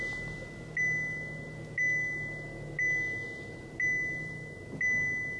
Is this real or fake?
real